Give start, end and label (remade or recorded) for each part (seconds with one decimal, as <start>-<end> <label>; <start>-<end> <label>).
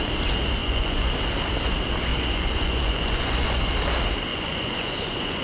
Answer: 0.0-0.6 recorded; 0.6-1.1 remade; 1.1-2.1 recorded; 2.1-3.6 remade; 3.6-4.3 recorded; 4.3-5.4 remade